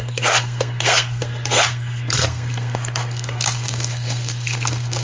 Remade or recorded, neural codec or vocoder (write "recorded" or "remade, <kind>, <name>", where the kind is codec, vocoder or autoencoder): remade, codec, SNAC